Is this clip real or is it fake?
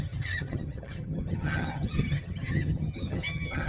fake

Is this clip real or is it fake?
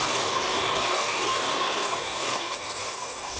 fake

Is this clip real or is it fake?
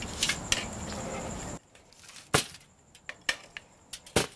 real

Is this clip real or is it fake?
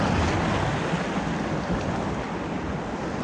real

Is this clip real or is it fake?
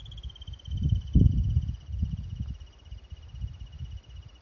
real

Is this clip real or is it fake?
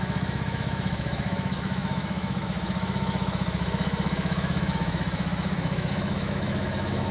fake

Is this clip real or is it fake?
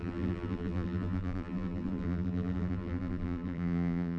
fake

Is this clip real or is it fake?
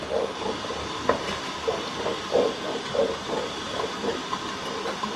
real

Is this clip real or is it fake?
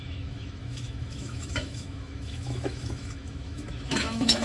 fake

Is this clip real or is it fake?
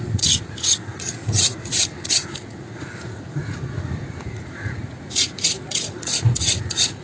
fake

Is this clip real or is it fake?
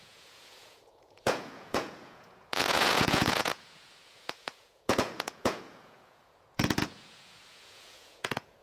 fake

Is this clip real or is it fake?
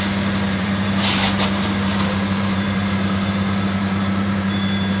fake